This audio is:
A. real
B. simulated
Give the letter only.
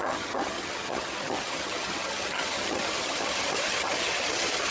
B